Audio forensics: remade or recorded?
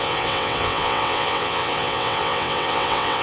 remade